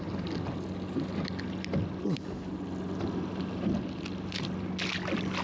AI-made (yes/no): no